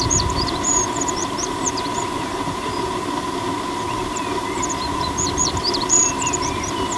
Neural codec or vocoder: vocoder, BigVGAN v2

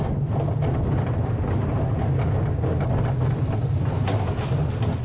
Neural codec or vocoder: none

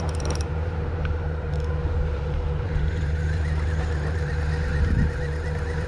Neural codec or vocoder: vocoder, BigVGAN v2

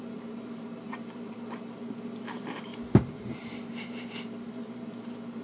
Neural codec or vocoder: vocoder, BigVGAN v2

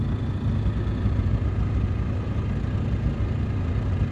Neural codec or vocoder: none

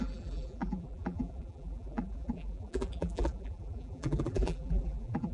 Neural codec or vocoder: vocoder, BigVGAN v2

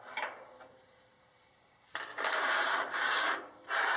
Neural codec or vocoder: vocoder, BigVGAN v2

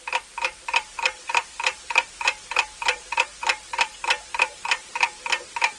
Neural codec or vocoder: vocoder, BigVGAN v2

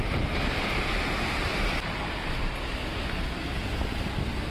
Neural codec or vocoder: none